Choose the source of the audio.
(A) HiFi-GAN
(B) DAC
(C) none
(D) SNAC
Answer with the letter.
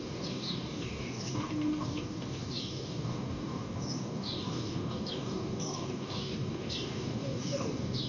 B